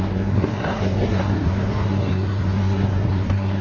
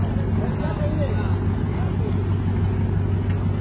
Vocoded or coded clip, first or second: first